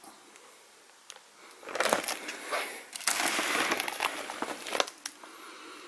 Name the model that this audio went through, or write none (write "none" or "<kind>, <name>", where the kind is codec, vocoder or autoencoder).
none